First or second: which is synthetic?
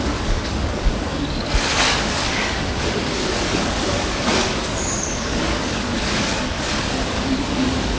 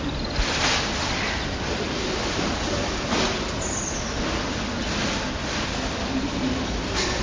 first